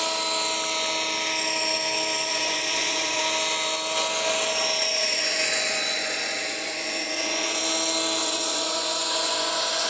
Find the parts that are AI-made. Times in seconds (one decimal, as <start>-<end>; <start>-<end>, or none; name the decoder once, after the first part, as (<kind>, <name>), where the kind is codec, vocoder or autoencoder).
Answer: 2.3-3.2 (vocoder, Vocos); 4.9-7.6; 8.2-9.9